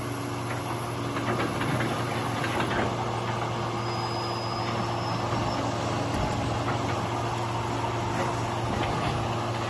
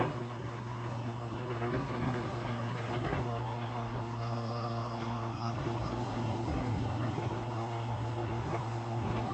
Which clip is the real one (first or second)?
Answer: first